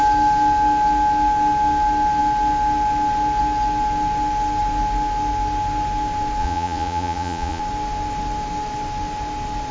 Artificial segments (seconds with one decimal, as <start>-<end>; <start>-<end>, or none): 6.4-7.6